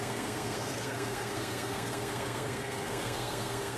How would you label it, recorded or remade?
remade